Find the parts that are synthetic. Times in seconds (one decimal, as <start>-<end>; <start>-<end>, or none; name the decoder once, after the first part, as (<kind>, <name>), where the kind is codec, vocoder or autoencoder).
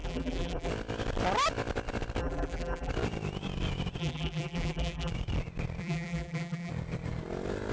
0.0-0.7 (vocoder, BigVGAN v2); 2.2-2.9; 4.0-5.1; 5.8-6.7